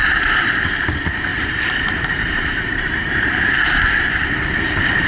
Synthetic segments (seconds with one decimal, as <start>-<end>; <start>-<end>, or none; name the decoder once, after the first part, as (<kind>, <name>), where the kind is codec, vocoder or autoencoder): 0.0-0.6 (vocoder, BigVGAN v2); 1.3-4.4